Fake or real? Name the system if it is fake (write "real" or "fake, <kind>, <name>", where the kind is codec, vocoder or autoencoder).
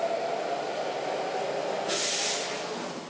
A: real